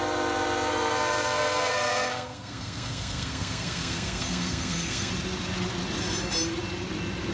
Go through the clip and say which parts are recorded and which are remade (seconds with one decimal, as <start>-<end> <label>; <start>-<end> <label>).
0.0-0.7 recorded; 0.7-5.1 remade; 5.1-7.3 recorded